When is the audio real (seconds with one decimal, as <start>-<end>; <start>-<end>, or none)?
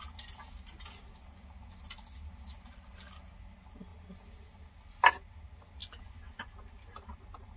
0.0-7.6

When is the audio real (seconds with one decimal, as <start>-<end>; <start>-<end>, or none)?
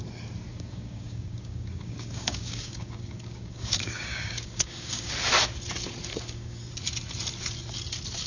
0.0-0.5; 5.1-6.1; 6.7-8.3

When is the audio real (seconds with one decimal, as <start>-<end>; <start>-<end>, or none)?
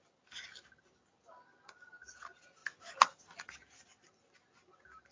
0.0-5.1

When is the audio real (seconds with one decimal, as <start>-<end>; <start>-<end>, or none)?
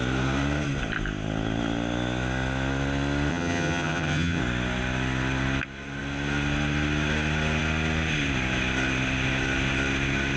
0.0-3.3; 4.4-10.4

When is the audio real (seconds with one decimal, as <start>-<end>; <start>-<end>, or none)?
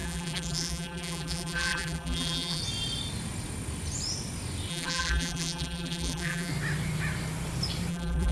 2.6-4.7; 6.5-7.9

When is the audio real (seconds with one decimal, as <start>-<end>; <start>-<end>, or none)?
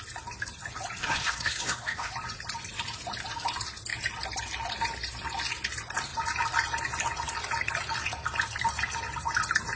0.0-1.0; 2.1-9.8